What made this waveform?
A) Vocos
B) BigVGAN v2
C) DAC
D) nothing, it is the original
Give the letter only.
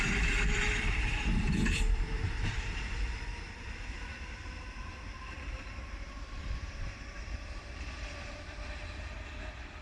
B